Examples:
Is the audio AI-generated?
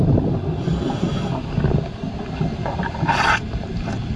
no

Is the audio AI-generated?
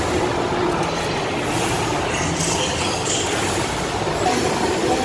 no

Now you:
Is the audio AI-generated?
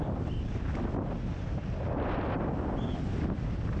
no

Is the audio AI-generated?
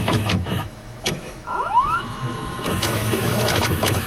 yes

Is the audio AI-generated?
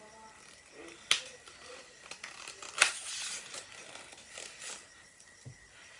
no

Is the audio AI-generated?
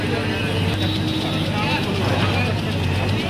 no